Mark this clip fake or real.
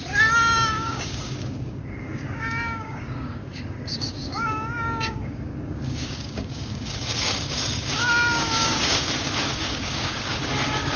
fake